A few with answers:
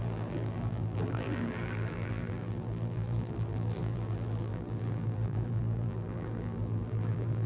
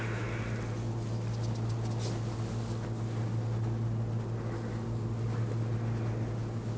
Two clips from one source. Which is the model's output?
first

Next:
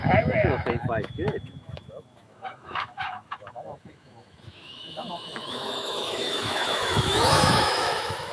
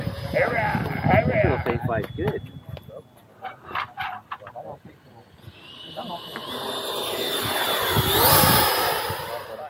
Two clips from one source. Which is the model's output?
first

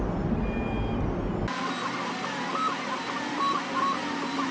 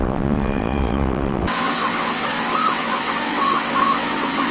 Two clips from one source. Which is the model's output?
second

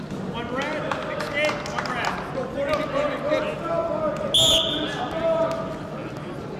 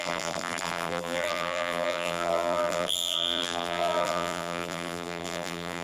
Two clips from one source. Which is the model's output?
second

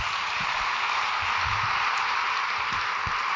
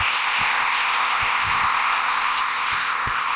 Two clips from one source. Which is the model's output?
second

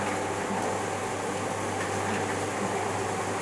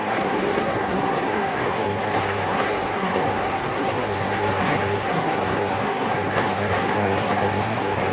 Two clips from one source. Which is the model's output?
second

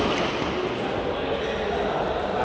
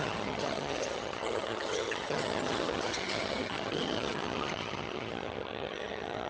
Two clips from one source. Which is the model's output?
second